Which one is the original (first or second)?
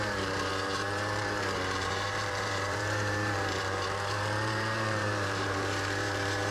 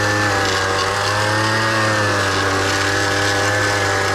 second